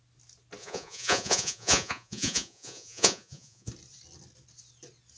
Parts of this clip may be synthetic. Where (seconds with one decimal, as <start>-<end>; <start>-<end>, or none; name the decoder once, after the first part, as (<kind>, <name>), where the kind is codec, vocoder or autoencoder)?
0.6-3.7 (vocoder, Vocos)